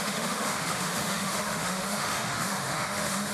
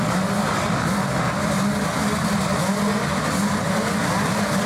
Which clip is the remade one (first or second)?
first